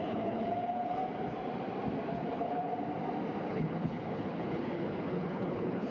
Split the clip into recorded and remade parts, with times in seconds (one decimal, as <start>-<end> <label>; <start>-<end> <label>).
0.0-1.0 remade; 1.0-2.1 recorded; 2.1-2.7 remade; 2.7-3.4 recorded; 3.4-5.9 remade